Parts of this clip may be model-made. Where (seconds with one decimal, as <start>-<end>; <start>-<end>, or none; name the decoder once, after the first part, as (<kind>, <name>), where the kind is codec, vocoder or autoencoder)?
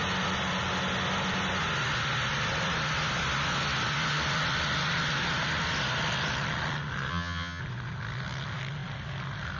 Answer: 7.1-7.6 (vocoder, HiFi-GAN)